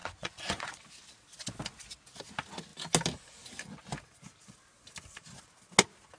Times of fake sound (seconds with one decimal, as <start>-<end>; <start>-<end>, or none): 0.0-0.8